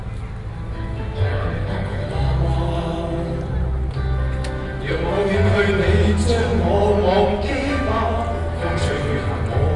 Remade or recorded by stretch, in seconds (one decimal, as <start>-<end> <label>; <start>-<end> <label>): 0.0-1.3 recorded; 1.3-2.1 remade; 2.1-9.8 recorded